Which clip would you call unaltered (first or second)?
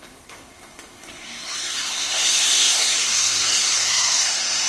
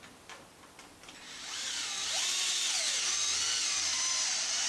second